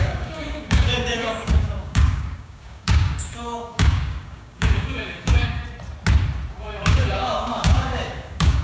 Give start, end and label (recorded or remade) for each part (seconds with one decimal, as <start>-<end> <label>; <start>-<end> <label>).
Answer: 0.0-5.6 remade; 5.6-6.5 recorded; 6.5-8.6 remade